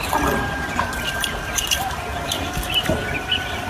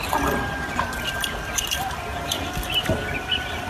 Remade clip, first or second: first